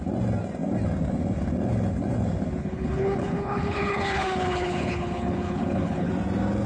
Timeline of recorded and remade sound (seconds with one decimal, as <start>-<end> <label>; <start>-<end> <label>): 0.0-2.6 recorded; 2.6-6.1 remade; 6.1-6.7 recorded